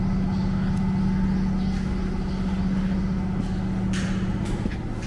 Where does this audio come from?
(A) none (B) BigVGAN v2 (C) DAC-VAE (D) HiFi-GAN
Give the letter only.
A